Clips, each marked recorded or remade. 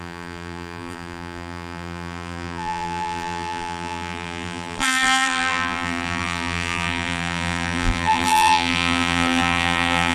remade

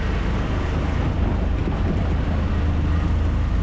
recorded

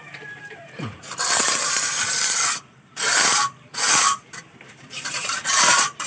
remade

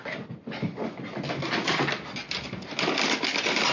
recorded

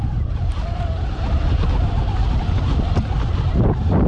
recorded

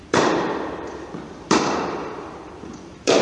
remade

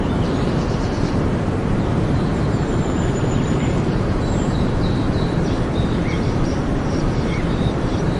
remade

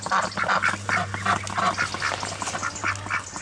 recorded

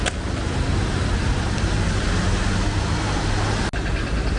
recorded